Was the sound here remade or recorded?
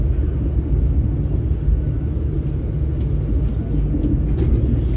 recorded